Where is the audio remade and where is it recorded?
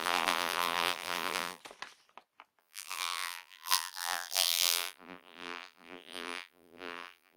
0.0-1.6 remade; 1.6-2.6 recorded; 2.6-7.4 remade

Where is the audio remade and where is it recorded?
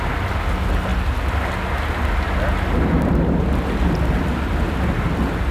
0.0-5.5 recorded